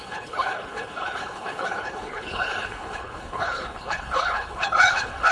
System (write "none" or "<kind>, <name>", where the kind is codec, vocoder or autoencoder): codec, HILCodec